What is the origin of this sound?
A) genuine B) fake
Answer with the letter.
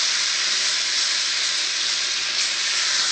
A